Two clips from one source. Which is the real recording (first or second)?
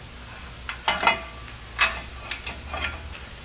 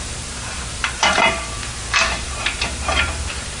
first